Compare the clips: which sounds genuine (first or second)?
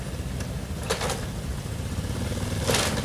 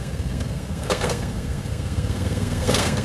first